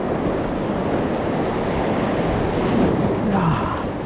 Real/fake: real